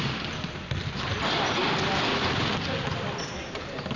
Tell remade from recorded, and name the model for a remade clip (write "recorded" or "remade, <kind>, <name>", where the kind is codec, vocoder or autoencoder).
recorded